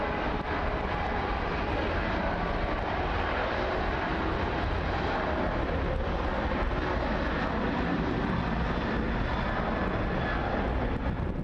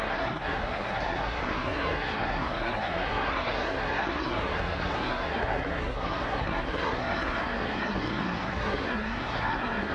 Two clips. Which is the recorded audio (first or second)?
first